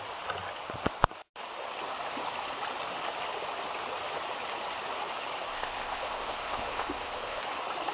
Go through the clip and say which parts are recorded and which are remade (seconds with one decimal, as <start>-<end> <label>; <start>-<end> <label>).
0.0-5.5 recorded; 5.5-7.4 remade; 7.4-7.9 recorded